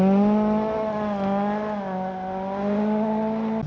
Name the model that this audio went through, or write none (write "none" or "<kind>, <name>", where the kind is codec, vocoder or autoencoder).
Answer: none